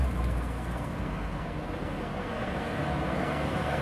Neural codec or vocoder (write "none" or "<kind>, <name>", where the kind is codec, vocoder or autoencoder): codec, SNAC